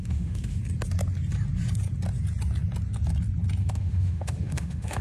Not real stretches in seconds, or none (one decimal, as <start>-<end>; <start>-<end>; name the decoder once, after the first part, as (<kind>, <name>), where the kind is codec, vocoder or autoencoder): 0.0-0.6 (autoencoder, DAC-VAE); 3.6-5.0